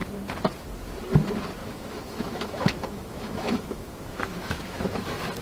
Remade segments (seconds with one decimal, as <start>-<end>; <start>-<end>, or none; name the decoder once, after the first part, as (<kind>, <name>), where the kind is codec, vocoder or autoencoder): 1.6-4.8 (autoencoder, DAC-VAE)